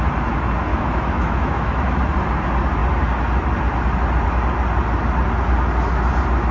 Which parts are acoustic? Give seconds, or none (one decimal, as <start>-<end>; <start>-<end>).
0.0-0.7; 2.0-6.5